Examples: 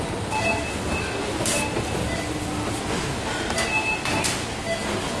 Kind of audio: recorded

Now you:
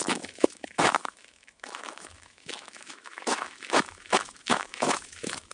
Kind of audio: remade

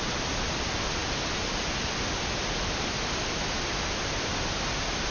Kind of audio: recorded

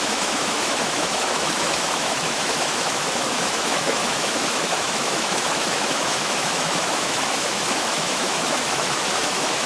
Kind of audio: remade